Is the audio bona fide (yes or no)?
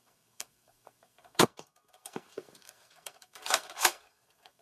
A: no